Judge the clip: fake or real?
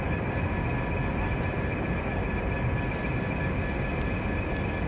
real